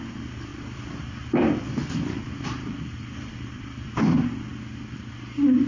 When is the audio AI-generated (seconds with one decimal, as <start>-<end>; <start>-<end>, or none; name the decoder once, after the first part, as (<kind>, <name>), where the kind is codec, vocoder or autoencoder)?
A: 0.5-3.9 (vocoder, BigVGAN v2); 4.5-5.1